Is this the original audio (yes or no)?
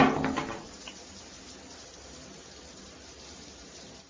yes